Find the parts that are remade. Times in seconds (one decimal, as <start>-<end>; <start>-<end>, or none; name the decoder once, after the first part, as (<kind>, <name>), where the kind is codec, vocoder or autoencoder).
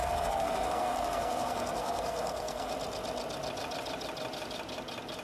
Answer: 0.0-2.7 (codec, SNAC)